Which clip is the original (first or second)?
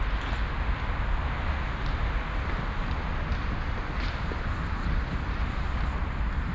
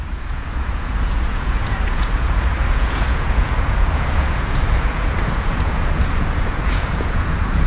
first